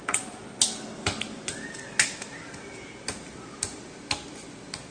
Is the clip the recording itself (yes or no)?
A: yes